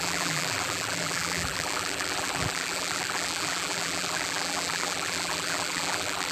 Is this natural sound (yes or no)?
no